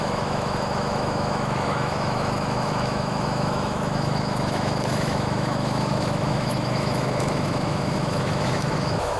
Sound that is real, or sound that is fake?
fake